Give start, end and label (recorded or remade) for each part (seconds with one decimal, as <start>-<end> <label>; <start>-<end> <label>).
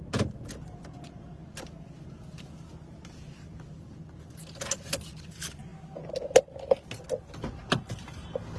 0.0-8.6 recorded